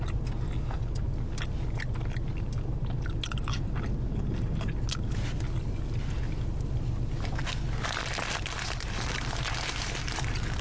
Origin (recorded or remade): recorded